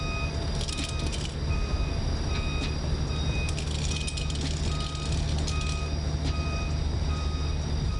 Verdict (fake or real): real